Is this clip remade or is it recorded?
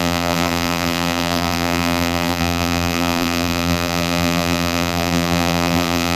remade